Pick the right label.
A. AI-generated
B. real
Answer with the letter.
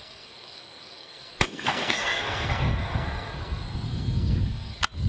A